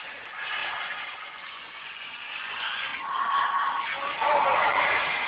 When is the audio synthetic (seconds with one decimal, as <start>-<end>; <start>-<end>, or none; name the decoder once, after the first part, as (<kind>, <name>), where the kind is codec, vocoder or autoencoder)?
0.0-2.9 (vocoder, Vocos); 4.7-5.3